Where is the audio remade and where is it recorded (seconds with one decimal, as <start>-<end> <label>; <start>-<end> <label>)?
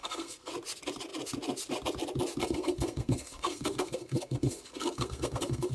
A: 0.0-0.5 remade; 0.5-2.4 recorded; 2.4-5.7 remade